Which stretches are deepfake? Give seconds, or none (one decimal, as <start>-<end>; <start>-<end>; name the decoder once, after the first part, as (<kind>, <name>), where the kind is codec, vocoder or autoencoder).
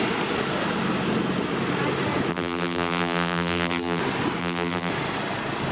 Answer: 2.3-4.0 (vocoder, BigVGAN v2); 4.4-4.9